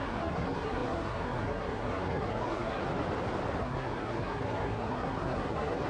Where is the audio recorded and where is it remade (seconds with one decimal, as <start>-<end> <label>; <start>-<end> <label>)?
0.0-2.8 remade; 2.8-3.6 recorded; 3.6-5.9 remade